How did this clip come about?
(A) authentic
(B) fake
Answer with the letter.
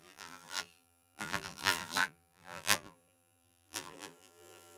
B